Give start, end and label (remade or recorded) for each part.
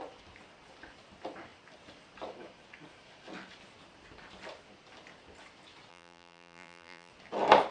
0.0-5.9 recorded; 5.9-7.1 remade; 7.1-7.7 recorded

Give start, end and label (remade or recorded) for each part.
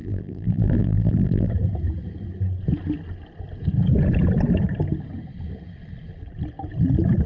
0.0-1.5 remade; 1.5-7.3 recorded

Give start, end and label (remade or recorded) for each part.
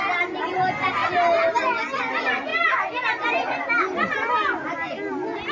0.0-5.5 recorded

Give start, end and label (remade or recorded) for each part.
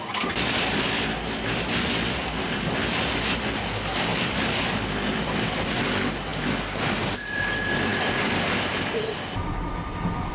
0.0-4.1 recorded; 4.1-5.8 remade; 5.8-7.9 recorded; 7.9-8.7 remade; 8.7-10.3 recorded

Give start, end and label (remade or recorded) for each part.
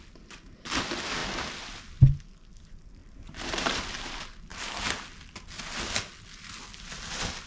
0.0-3.0 recorded; 3.0-3.8 remade; 3.8-7.5 recorded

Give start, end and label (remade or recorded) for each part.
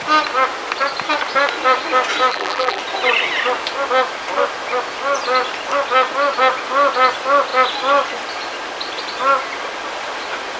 0.0-2.3 recorded; 2.3-2.8 remade; 2.8-10.6 recorded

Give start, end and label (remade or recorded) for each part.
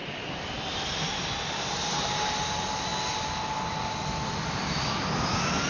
0.0-5.7 recorded